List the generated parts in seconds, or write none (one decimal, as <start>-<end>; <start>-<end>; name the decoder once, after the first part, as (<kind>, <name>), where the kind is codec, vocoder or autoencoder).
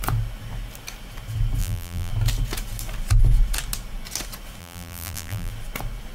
1.6-2.1 (vocoder, BigVGAN v2); 4.6-5.5